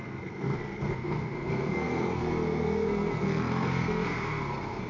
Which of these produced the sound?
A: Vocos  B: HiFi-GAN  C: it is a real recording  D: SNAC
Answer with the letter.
D